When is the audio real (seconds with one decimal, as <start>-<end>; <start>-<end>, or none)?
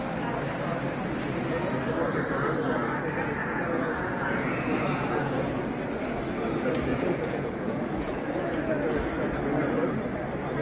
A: 0.0-3.4; 5.6-6.9; 8.5-10.6